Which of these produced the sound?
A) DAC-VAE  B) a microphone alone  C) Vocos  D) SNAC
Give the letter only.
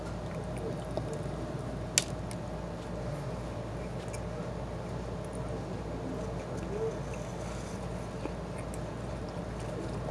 B